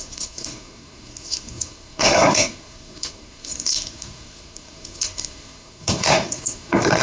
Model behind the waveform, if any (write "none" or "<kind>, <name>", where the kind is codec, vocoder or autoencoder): codec, SNAC